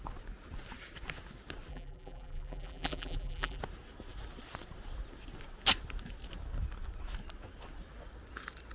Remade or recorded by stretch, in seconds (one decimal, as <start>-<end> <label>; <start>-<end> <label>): 0.0-1.7 recorded; 1.7-3.6 remade; 3.6-8.7 recorded